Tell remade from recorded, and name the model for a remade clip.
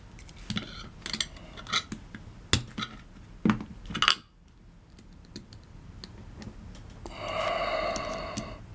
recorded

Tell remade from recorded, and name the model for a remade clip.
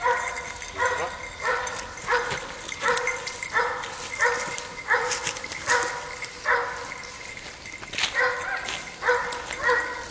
recorded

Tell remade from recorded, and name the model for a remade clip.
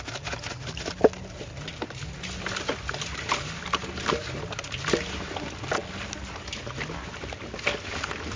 recorded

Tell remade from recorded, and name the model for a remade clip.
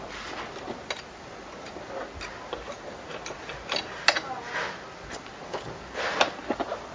recorded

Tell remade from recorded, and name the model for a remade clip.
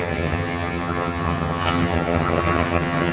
remade, vocoder, HiFi-GAN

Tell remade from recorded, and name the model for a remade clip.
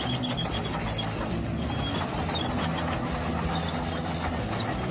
recorded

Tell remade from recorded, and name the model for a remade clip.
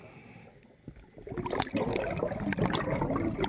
recorded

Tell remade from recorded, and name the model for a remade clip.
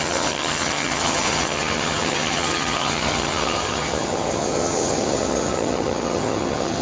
remade, vocoder, HiFi-GAN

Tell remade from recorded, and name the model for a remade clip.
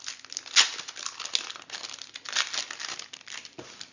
recorded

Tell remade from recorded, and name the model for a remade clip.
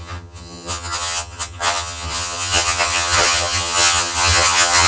remade, vocoder, HiFi-GAN